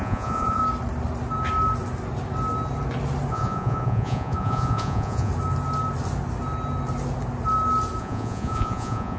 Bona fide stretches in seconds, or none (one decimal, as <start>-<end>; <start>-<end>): 0.6-3.3; 5.3-8.0